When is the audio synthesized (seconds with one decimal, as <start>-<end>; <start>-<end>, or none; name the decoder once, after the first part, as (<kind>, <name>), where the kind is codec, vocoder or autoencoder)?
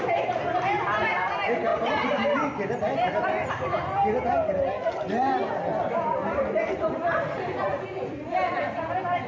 none